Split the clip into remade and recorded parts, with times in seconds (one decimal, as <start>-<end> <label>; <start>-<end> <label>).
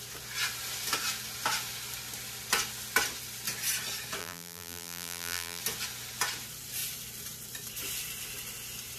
0.0-4.2 recorded; 4.2-5.6 remade; 5.6-9.0 recorded